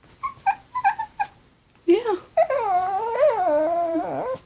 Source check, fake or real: real